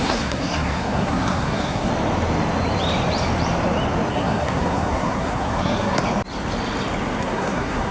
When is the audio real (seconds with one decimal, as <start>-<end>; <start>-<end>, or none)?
1.9-4.1; 6.0-7.2